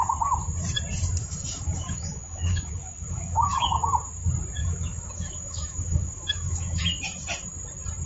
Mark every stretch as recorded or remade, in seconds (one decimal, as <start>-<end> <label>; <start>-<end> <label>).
0.0-1.2 recorded; 1.2-3.8 remade; 3.8-4.6 recorded; 4.6-6.8 remade; 6.8-8.1 recorded